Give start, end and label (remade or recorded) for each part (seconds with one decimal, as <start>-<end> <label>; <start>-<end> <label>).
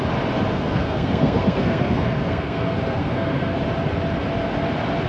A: 0.0-0.5 recorded; 0.5-3.6 remade; 3.6-5.1 recorded